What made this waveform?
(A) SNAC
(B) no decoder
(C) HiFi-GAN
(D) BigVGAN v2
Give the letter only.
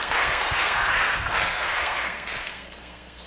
A